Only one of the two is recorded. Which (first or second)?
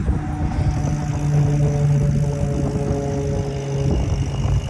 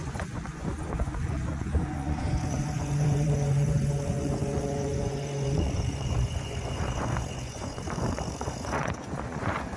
first